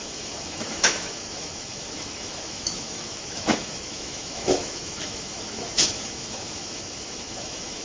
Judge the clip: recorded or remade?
remade